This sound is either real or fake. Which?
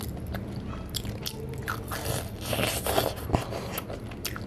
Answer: real